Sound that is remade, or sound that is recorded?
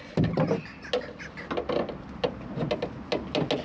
recorded